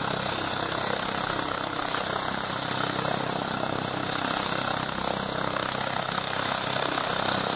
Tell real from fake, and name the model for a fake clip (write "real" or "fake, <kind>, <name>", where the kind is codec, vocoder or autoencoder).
real